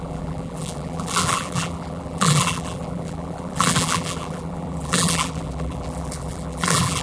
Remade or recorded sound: remade